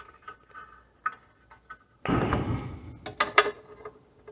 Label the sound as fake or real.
real